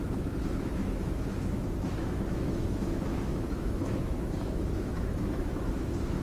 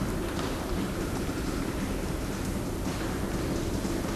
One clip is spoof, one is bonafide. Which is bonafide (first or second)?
second